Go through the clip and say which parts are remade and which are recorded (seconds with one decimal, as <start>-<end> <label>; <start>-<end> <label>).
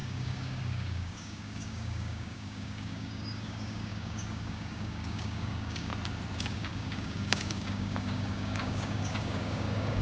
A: 0.0-5.9 remade; 5.9-6.4 recorded; 6.4-10.0 remade